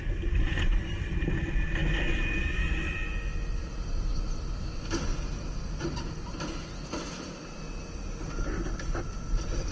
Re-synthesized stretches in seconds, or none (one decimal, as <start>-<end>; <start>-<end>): none